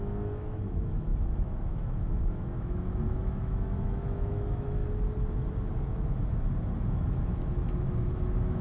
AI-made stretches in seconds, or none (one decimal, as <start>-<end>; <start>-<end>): 0.0-4.8; 6.9-8.6